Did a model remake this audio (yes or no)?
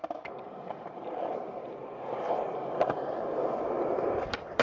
yes